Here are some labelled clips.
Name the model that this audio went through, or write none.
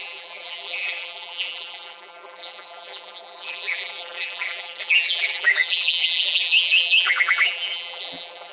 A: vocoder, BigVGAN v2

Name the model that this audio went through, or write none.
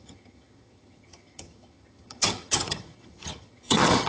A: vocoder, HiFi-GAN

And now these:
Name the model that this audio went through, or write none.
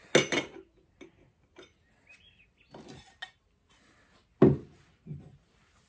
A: none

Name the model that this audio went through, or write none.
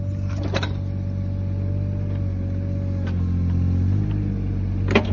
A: none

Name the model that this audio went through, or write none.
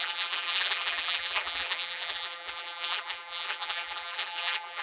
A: vocoder, BigVGAN v2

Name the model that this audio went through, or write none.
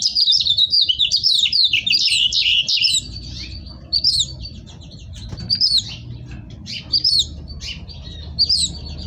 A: vocoder, BigVGAN v2